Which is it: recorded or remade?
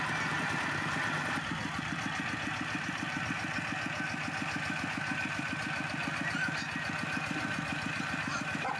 recorded